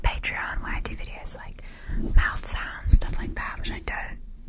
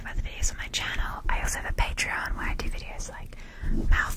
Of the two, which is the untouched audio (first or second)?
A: second